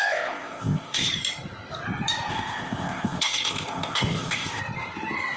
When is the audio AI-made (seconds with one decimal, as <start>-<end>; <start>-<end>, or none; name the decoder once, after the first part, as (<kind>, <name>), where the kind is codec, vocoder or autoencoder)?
0.0-1.1 (codec, ZipCodec); 2.3-4.6